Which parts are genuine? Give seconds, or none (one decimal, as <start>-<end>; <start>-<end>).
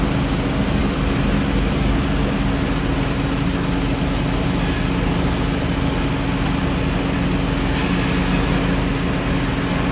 0.0-9.9